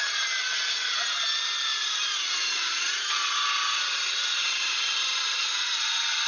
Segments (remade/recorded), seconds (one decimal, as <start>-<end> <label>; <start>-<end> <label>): 0.0-6.3 recorded